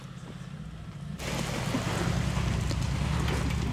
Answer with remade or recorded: recorded